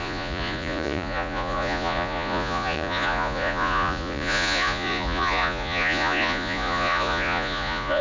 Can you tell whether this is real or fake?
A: fake